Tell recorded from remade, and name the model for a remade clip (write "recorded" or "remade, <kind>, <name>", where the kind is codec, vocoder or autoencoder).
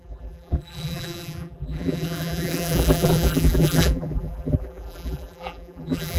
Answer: remade, vocoder, BigVGAN v2